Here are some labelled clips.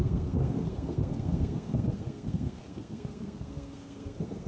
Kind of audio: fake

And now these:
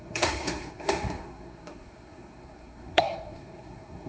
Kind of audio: fake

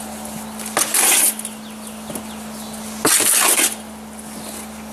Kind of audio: real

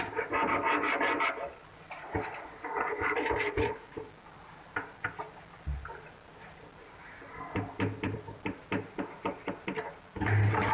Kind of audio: real